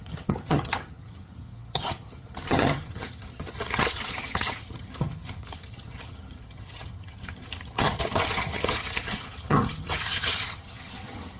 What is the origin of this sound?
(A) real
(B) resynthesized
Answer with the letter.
B